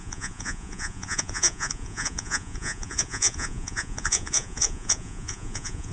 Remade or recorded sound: remade